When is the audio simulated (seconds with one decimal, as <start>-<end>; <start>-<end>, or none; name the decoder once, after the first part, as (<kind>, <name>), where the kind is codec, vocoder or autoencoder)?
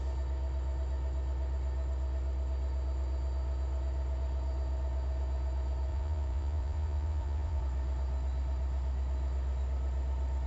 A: 5.9-7.6 (vocoder, Vocos)